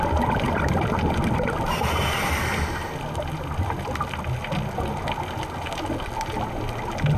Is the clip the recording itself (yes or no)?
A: yes